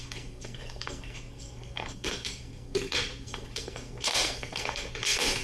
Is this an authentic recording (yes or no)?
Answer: no